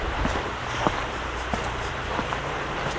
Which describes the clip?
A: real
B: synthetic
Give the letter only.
B